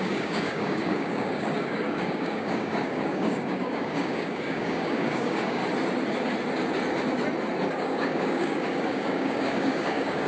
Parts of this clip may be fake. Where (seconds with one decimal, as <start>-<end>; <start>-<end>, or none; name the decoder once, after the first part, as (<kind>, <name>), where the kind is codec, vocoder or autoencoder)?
0.0-5.6 (codec, DAC); 7.7-10.3